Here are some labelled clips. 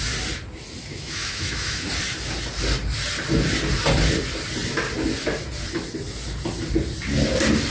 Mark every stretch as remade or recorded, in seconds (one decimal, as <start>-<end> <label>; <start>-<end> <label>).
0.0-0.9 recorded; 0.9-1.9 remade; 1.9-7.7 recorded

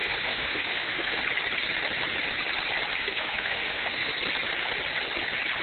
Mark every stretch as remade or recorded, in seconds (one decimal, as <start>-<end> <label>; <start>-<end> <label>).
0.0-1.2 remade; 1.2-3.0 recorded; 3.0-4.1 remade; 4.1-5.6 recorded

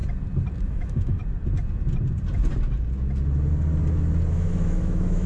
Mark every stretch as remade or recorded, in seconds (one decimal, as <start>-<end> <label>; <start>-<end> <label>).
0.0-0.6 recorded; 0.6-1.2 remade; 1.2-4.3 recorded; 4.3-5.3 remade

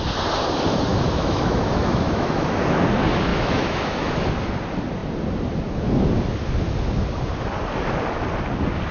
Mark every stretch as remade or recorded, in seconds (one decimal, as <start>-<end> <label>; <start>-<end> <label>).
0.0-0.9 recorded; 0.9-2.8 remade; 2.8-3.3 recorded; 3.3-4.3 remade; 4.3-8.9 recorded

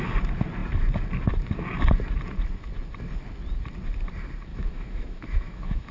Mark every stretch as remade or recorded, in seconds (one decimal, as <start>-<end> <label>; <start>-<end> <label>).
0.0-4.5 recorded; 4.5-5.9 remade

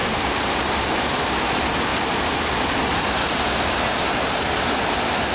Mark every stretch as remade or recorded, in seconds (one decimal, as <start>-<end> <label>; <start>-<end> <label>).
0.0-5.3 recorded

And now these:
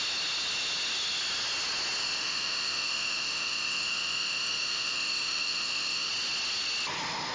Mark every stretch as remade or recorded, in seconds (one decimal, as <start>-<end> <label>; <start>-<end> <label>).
0.0-2.0 recorded; 2.0-6.1 remade; 6.1-7.3 recorded

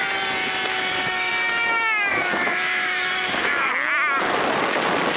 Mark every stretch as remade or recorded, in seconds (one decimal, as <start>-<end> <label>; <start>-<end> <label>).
0.0-0.7 recorded; 0.7-1.3 remade; 1.3-2.1 recorded; 2.1-3.7 remade; 3.7-5.2 recorded